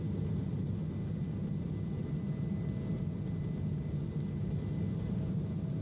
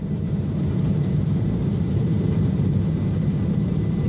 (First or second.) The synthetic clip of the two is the second